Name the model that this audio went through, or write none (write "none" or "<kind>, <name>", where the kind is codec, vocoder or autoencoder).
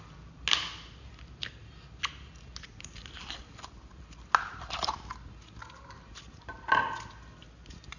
none